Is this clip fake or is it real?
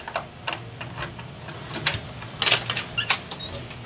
real